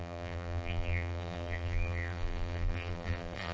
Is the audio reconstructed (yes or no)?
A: yes